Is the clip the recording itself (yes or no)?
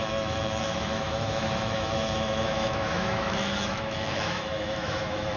no